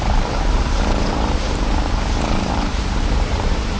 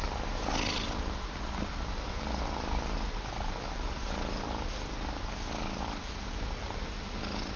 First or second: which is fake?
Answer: first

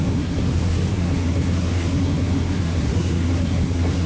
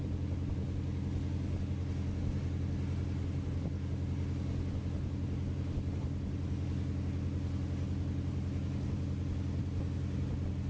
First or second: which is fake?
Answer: first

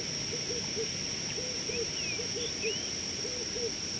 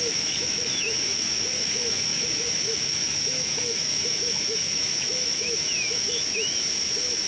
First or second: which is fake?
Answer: second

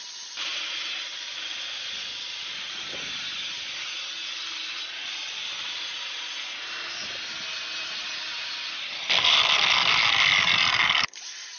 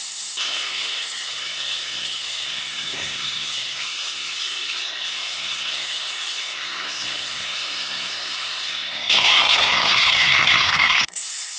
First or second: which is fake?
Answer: second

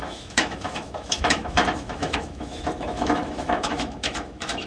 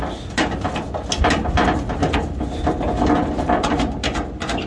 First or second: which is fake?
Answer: first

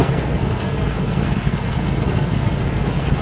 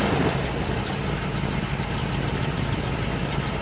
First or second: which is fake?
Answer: first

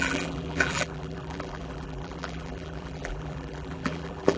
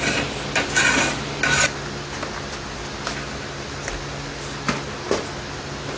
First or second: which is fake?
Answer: first